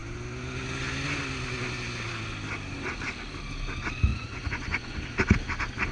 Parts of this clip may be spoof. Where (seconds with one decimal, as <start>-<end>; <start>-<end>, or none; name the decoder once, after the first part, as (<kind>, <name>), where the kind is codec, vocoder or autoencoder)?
4.1-5.0 (vocoder, Vocos)